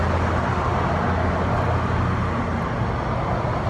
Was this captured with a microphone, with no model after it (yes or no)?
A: yes